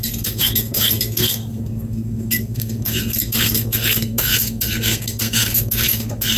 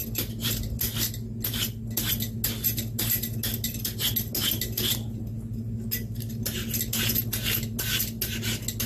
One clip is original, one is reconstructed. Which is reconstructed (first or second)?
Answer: first